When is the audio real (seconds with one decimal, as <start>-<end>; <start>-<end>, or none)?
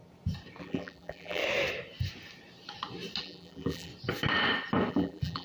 0.0-0.6; 1.4-3.2; 3.9-4.9